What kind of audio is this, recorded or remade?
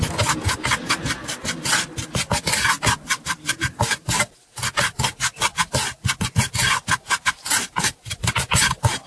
recorded